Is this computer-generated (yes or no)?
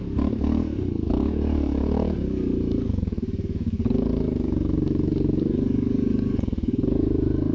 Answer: yes